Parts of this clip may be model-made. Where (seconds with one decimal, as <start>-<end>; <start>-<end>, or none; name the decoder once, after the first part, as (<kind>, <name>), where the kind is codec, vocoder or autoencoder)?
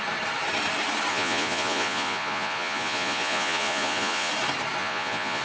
1.1-4.3 (vocoder, Vocos); 4.8-5.4